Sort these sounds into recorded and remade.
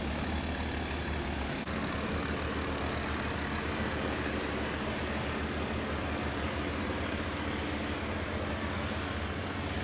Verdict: recorded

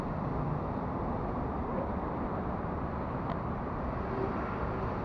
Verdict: remade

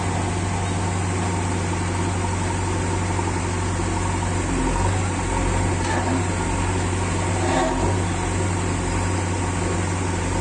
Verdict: recorded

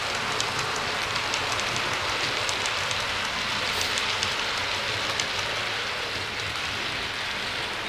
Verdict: recorded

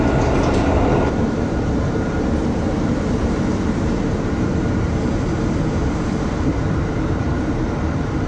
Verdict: remade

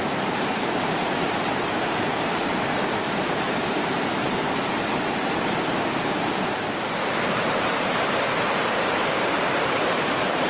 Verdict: remade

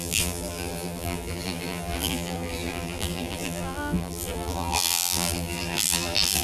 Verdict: remade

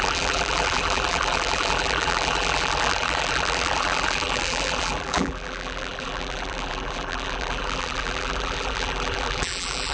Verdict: remade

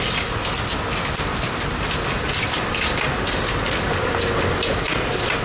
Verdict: recorded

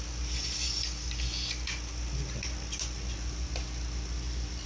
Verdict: recorded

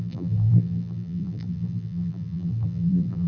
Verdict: remade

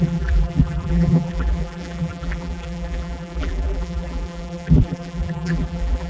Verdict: remade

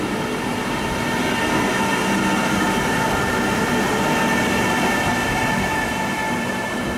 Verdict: recorded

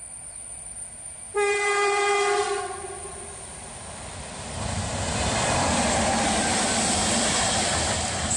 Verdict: remade